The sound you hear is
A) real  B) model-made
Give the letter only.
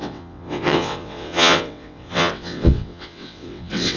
B